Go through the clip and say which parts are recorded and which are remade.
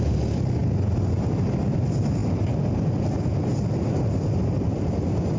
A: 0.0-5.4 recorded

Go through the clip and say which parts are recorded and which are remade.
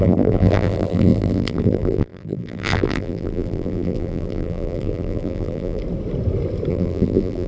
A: 0.0-5.8 remade; 5.8-6.7 recorded; 6.7-7.5 remade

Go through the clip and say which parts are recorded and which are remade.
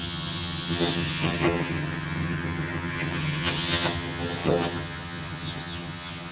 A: 0.0-6.3 remade